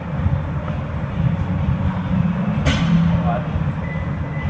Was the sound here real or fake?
real